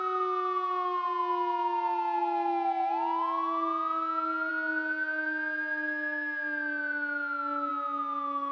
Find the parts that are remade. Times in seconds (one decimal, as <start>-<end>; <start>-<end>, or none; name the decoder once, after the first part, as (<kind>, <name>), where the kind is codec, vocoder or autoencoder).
none